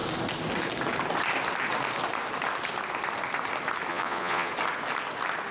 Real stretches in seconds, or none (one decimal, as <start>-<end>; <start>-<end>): 0.0-3.9; 4.5-5.5